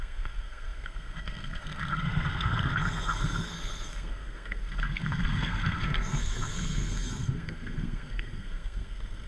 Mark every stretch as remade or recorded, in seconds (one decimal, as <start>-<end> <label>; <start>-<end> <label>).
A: 0.0-9.3 remade